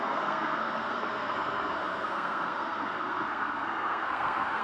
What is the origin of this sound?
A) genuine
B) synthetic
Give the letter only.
B